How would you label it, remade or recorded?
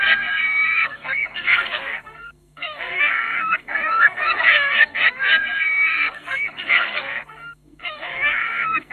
remade